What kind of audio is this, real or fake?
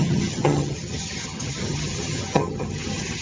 fake